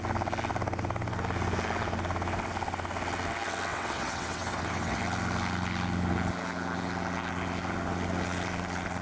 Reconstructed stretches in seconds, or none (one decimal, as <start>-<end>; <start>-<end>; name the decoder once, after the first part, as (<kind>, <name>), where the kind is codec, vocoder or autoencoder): 3.7-5.0 (vocoder, WaveNeXt)